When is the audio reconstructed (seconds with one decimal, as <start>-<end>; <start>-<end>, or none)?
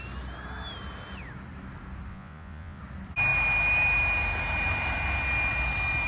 2.1-2.8